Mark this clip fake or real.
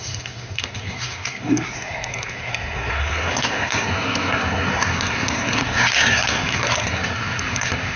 fake